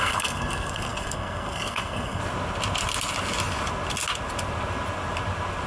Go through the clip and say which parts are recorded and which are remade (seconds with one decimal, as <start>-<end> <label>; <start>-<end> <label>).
0.0-2.2 remade; 2.2-5.7 recorded